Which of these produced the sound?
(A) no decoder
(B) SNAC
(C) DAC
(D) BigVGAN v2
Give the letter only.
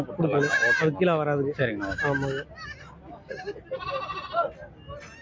A